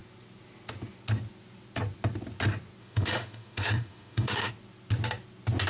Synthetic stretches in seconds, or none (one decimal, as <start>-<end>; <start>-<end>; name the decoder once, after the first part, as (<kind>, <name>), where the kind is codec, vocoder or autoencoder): 2.8-4.5 (autoencoder, DAC-VAE)